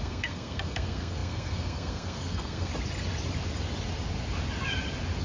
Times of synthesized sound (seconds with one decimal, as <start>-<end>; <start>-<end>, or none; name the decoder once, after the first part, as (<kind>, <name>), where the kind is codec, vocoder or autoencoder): 0.0-2.7 (codec, SNAC)